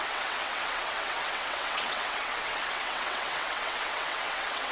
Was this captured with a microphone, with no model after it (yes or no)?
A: no